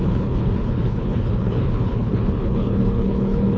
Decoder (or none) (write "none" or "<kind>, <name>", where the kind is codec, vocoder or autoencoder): codec, HILCodec